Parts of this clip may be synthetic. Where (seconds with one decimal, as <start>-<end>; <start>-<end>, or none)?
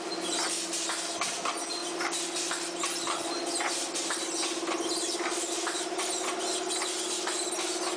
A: none